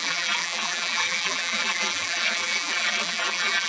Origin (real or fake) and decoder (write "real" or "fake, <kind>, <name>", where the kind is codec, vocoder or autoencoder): fake, vocoder, BigVGAN v2